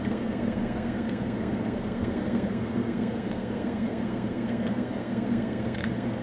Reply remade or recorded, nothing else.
remade